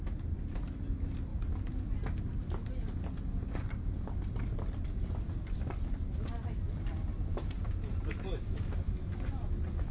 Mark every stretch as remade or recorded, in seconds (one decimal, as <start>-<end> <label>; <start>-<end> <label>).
0.0-7.1 recorded; 7.1-7.7 remade; 7.7-9.9 recorded